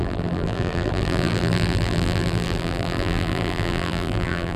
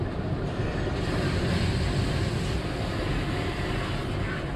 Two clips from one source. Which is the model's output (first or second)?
first